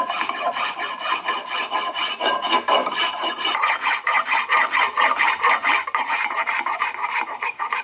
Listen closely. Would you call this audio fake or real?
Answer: fake